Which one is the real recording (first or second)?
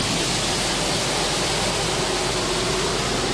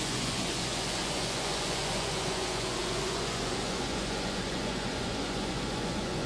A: first